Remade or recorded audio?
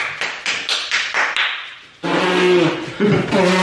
recorded